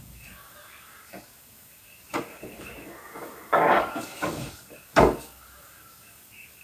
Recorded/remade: remade